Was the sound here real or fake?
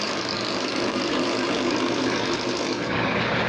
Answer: fake